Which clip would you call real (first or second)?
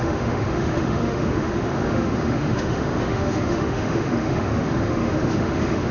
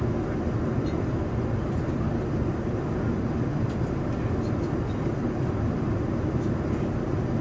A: second